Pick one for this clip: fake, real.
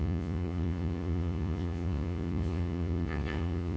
fake